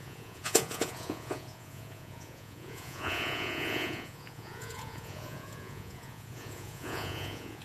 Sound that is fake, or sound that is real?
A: fake